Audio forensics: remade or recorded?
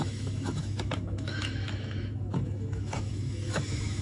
remade